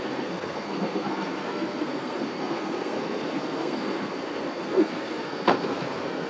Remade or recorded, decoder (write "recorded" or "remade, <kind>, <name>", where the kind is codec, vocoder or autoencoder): remade, codec, SNAC